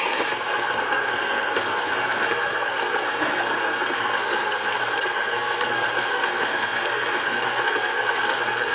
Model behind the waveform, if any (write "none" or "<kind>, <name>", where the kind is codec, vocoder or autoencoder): codec, SNAC